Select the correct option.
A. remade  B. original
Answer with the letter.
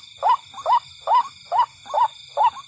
B